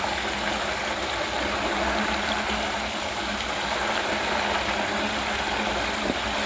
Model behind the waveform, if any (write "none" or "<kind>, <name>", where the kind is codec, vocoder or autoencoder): none